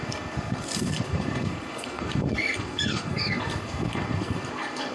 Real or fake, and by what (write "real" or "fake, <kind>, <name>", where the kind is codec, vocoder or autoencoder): fake, codec, SNAC